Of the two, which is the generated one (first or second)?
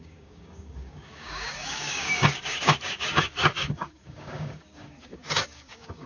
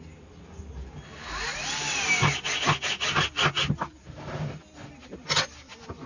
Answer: first